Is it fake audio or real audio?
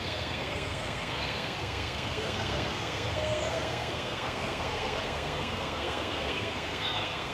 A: fake